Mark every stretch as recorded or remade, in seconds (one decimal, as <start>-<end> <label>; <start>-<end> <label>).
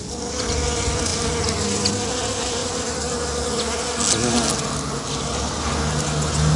0.0-6.6 recorded